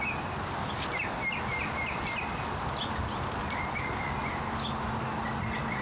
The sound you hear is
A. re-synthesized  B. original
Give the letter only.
B